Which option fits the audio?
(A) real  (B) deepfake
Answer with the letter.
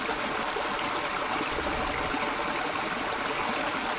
A